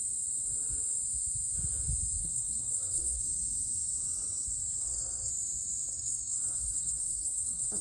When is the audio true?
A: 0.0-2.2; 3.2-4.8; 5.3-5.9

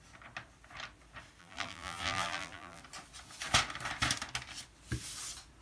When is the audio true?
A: 0.0-1.4; 2.8-5.6

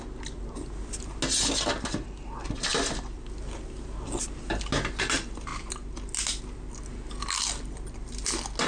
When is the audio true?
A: 0.0-8.7